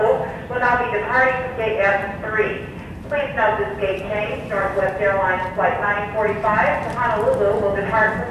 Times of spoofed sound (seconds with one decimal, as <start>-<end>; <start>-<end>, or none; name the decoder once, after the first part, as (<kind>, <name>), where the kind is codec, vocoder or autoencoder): 2.0-5.6 (vocoder, BigVGAN v2)